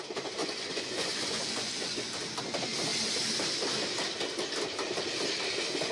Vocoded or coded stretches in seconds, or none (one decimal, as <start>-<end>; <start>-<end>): 0.4-2.1